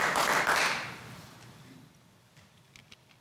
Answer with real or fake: fake